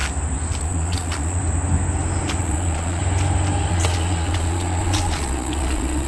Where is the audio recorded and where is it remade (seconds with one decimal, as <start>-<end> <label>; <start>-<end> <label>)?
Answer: 0.0-0.6 recorded; 0.6-1.4 remade; 1.4-2.4 recorded; 2.4-3.0 remade; 3.0-3.7 recorded; 3.7-6.1 remade